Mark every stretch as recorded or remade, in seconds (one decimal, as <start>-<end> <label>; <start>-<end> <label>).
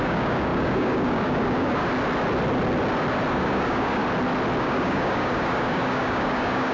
0.0-1.8 remade; 1.8-3.3 recorded; 3.3-4.0 remade; 4.0-4.6 recorded; 4.6-6.7 remade